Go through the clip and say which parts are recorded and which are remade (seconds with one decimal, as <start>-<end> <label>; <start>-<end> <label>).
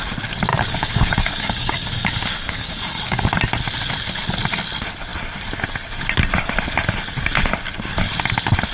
0.0-0.5 recorded; 0.5-3.3 remade; 3.3-8.7 recorded